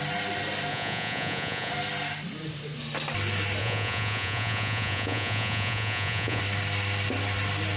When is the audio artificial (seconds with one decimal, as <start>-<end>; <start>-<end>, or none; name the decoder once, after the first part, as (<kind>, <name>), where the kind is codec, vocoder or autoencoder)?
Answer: 0.7-1.7 (vocoder, Vocos); 3.6-6.4